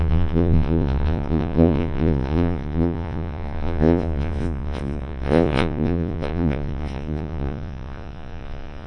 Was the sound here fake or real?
fake